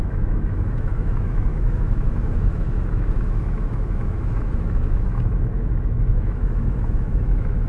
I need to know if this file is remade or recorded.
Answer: remade